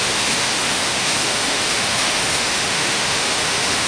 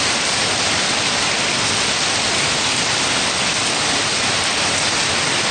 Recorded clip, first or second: second